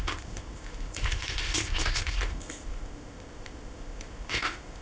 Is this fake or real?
fake